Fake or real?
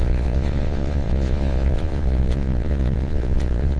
fake